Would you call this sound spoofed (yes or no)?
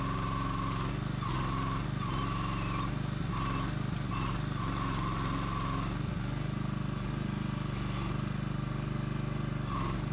no